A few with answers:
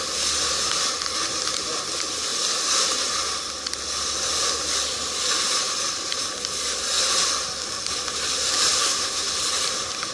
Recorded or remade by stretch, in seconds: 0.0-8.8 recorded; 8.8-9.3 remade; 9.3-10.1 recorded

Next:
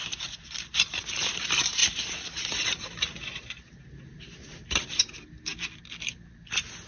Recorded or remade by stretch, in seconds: 0.0-1.8 recorded; 1.8-5.0 remade; 5.0-6.9 recorded